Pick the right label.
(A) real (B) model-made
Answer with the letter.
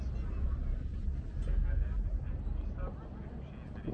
A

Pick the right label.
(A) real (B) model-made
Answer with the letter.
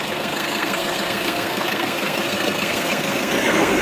B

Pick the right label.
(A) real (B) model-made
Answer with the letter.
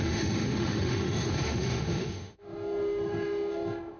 B